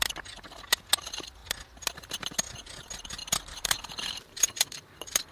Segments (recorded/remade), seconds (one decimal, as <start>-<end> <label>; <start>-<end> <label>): 0.0-3.2 recorded; 3.2-5.3 remade